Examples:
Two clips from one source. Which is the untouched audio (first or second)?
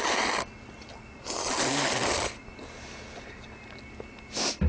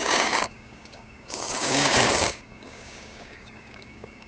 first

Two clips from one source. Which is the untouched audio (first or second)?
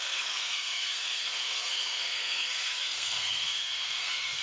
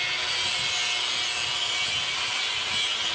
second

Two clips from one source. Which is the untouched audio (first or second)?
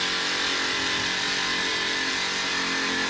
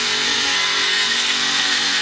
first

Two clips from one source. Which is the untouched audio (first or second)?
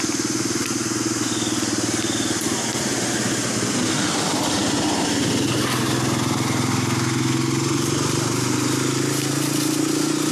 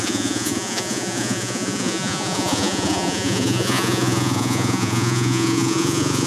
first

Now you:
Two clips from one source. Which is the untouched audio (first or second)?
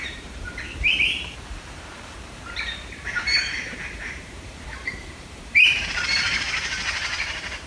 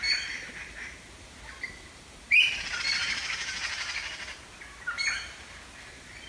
second